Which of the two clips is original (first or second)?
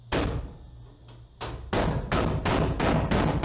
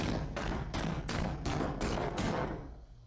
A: first